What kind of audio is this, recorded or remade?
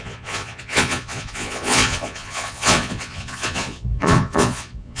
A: remade